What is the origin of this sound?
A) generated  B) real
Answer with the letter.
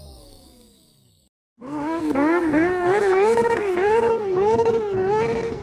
A